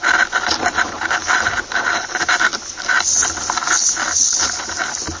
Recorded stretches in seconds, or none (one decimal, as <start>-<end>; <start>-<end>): 0.0-5.2